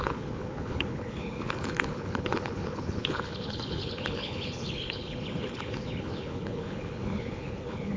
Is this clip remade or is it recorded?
remade